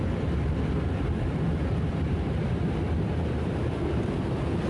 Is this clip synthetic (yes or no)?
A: yes